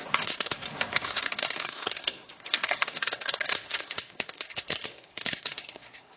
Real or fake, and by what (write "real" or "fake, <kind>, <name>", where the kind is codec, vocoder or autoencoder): fake, codec, SNAC